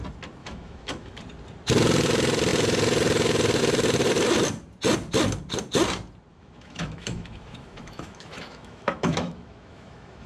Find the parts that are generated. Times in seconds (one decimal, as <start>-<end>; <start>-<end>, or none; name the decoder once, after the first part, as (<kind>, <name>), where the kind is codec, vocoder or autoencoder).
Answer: 0.4-1.2 (autoencoder, DAC-VAE); 6.3-10.3